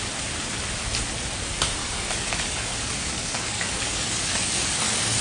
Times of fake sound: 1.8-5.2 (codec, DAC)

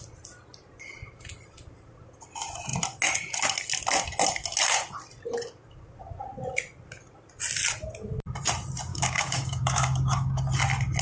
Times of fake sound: 8.9-10.4 (codec, DAC)

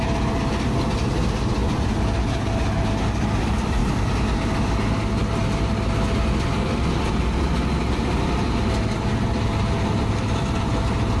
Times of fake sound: none

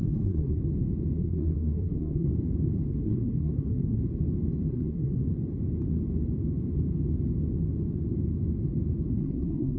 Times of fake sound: 0.0-0.6 (codec, SNAC); 1.2-2.3; 2.9-4.0; 4.7-5.3; 9.1-9.8

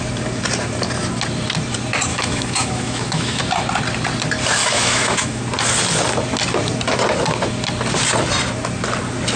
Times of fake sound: 2.1-3.4 (autoencoder, DAC-VAE); 4.6-5.4

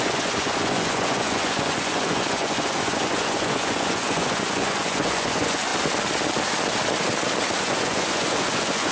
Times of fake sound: 0.0-5.7 (vocoder, Vocos); 7.6-8.9